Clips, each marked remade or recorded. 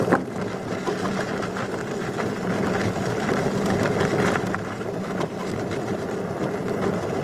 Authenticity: remade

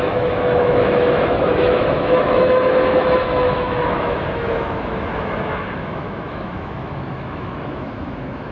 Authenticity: remade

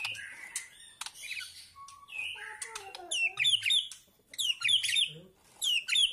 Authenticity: recorded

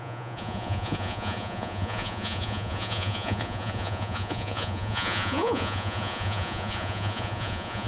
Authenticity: remade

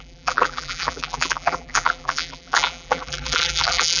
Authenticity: remade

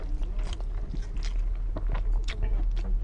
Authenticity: recorded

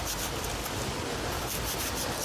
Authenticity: remade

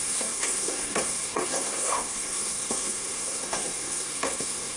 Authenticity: remade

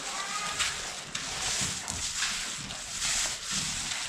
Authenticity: recorded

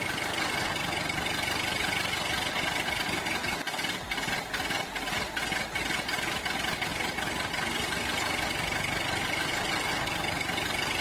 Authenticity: recorded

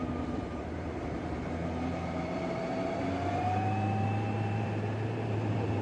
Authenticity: remade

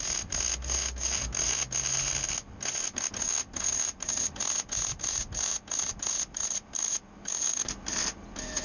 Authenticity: recorded